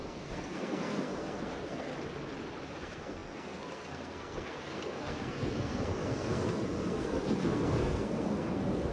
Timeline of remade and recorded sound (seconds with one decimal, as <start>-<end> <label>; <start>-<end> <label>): 0.0-1.9 remade; 1.9-2.7 recorded; 2.7-8.9 remade